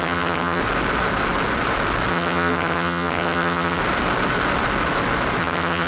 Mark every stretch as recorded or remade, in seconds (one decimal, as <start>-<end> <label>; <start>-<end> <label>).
0.0-0.6 remade; 0.6-2.1 recorded; 2.1-3.8 remade; 3.8-5.4 recorded; 5.4-5.9 remade